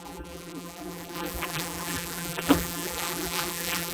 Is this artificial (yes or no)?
yes